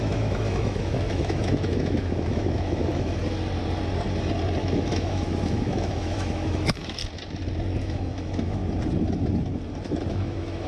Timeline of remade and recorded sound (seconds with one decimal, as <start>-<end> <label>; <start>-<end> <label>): 0.0-3.2 remade; 3.2-4.6 recorded; 4.6-7.0 remade; 7.0-7.8 recorded; 7.8-8.6 remade; 8.6-10.1 recorded; 10.1-10.7 remade